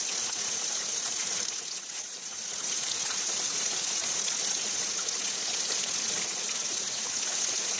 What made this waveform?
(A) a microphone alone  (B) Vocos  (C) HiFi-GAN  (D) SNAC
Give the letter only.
B